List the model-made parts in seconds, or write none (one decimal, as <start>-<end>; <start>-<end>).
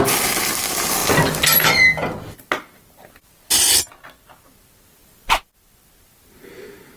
none